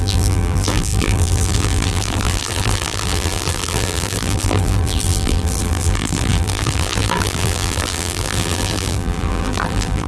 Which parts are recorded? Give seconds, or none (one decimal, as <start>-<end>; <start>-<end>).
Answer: none